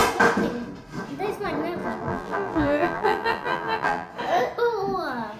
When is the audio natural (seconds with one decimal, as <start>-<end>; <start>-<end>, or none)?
0.0-1.8; 4.1-5.4